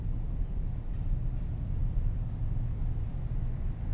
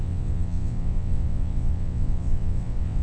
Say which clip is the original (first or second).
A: first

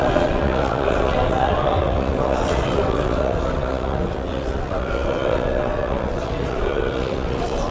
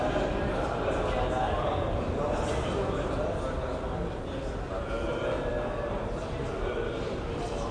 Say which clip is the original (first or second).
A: second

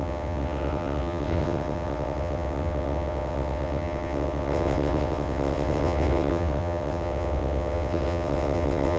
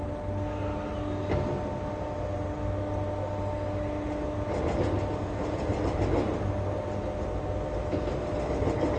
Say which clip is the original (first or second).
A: second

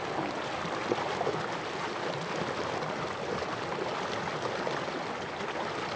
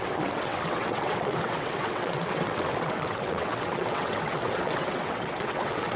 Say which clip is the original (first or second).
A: first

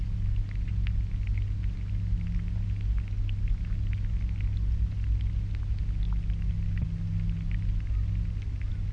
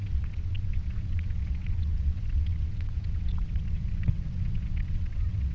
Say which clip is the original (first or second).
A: first